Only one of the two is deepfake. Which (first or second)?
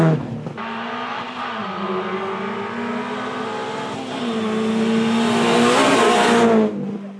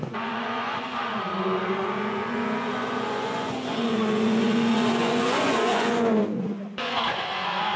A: second